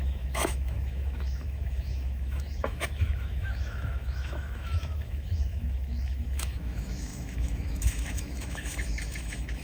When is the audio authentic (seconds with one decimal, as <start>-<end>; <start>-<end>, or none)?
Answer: none